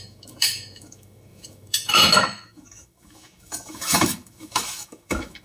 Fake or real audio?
fake